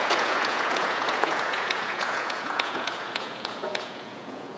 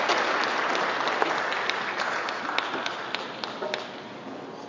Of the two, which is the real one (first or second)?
second